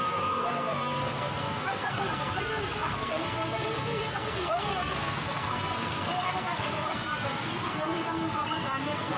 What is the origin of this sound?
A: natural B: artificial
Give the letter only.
B